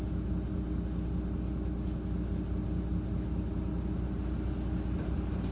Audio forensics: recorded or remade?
recorded